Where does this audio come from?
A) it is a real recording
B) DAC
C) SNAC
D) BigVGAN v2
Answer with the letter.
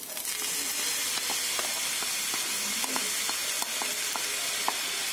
A